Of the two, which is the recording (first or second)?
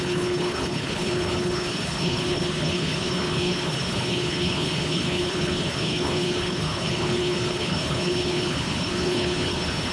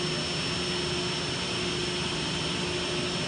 second